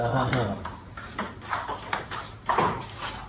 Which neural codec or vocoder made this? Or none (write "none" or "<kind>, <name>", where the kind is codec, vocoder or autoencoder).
none